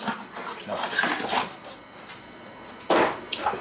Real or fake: fake